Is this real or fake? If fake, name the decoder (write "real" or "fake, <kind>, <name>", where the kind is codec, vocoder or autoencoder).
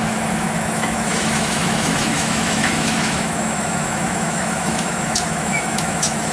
fake, autoencoder, DAC-VAE